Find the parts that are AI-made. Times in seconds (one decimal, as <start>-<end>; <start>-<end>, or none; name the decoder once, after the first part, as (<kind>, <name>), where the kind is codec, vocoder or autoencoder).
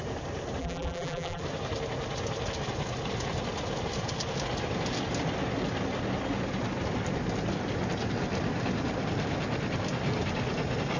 0.6-1.4 (vocoder, BigVGAN v2)